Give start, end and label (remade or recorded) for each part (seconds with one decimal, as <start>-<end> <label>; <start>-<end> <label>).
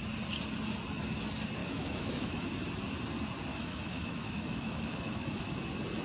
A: 0.0-1.6 recorded; 1.6-2.5 remade; 2.5-3.5 recorded; 3.5-5.4 remade; 5.4-6.0 recorded